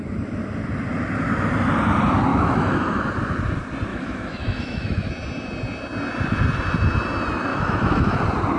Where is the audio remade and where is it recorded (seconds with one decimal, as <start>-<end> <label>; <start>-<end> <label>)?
0.0-2.3 recorded; 2.3-3.0 remade; 3.0-3.9 recorded; 3.9-5.1 remade; 5.1-7.5 recorded; 7.5-8.2 remade; 8.2-8.6 recorded

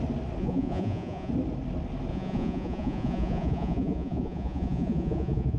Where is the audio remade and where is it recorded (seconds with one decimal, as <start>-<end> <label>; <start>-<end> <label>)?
0.0-0.4 recorded; 0.4-1.3 remade; 1.3-2.1 recorded; 2.1-5.6 remade

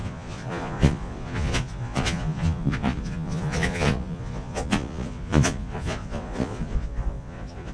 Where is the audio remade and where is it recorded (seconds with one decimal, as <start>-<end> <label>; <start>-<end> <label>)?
0.0-7.7 remade

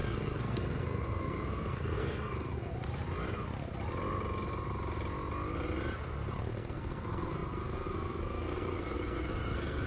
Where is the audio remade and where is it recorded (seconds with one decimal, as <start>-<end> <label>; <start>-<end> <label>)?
0.0-2.7 remade; 2.7-6.4 recorded; 6.4-9.9 remade

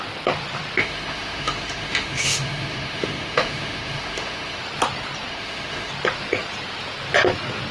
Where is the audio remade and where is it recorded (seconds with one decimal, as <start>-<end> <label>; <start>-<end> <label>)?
0.0-0.8 recorded; 0.8-4.6 remade; 4.6-5.3 recorded; 5.3-5.9 remade; 5.9-7.7 recorded